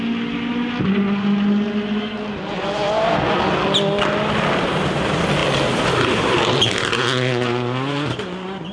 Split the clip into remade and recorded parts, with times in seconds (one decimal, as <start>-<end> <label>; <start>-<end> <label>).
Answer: 0.0-8.7 recorded